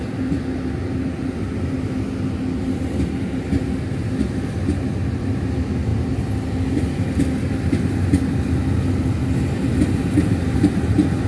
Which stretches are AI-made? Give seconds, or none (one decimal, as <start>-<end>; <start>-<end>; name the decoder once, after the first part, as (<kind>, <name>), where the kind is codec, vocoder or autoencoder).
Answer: none

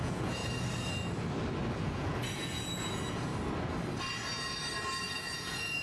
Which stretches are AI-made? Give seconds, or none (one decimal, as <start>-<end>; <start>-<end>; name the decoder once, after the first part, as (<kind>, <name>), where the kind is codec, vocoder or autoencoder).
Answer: 0.0-0.4 (vocoder, Vocos); 1.7-3.3; 5.0-5.8

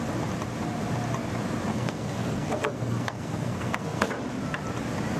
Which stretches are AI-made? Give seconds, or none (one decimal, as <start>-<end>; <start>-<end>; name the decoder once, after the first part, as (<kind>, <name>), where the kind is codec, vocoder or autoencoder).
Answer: 1.7-4.1 (codec, SNAC)

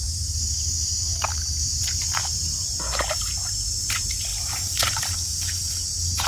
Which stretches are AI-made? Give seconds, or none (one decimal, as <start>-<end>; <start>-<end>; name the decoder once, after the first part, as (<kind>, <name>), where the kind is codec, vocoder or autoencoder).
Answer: 0.0-6.3 (vocoder, BigVGAN v2)